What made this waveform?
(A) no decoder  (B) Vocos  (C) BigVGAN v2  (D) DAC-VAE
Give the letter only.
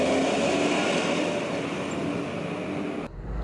A